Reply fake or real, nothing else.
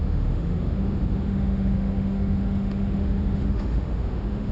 fake